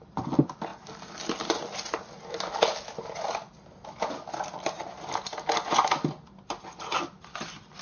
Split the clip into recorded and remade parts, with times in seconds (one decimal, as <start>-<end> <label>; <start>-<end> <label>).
0.0-7.8 recorded